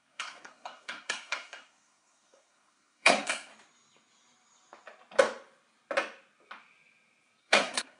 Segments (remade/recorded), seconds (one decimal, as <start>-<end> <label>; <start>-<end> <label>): 0.0-3.5 remade; 3.5-7.4 recorded; 7.4-8.0 remade